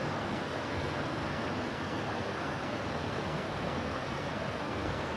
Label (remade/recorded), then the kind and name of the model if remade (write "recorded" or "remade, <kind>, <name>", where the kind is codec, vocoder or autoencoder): remade, codec, SNAC